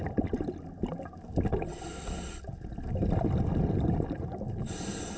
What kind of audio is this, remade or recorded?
recorded